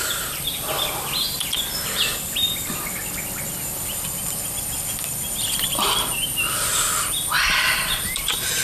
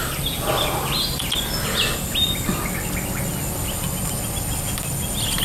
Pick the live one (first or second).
second